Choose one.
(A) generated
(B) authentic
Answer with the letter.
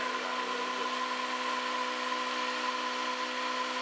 B